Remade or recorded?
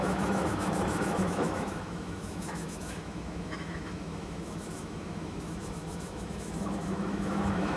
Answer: remade